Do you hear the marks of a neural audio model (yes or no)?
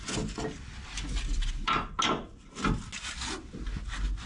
no